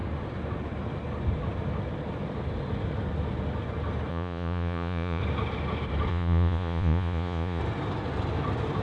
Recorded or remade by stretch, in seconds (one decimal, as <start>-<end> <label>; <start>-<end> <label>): 0.0-4.1 recorded; 4.1-5.2 remade; 5.2-6.1 recorded; 6.1-7.6 remade; 7.6-8.8 recorded